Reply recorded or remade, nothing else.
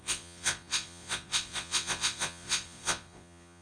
remade